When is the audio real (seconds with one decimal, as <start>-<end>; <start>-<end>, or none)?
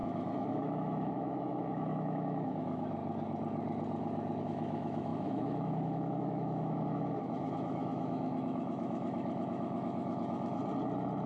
3.0-4.4; 10.6-11.3